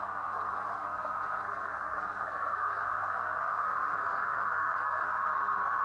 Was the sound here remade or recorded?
remade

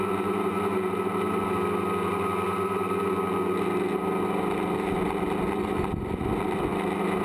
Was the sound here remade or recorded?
recorded